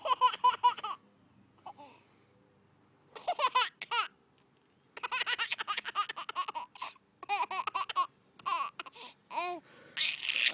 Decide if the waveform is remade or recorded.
recorded